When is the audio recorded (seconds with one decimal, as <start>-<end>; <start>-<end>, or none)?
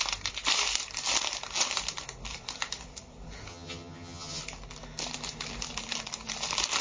0.0-3.5; 4.4-6.8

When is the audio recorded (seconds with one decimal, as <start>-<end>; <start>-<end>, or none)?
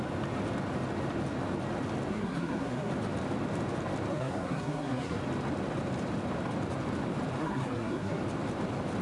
0.0-2.1; 2.9-4.1; 5.2-7.4; 8.2-9.0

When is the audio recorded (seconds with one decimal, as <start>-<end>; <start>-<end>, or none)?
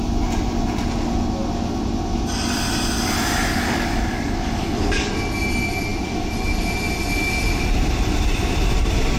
0.0-3.5; 5.1-9.2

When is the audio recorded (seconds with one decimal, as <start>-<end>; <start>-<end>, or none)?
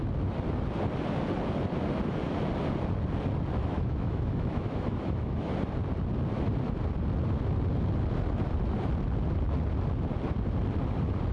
0.0-3.6; 5.5-11.3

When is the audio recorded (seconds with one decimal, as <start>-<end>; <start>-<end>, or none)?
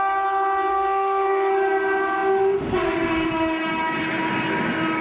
0.0-0.7; 1.5-5.0